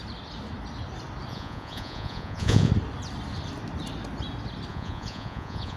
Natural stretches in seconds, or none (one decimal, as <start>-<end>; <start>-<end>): 0.0-1.3; 2.7-4.7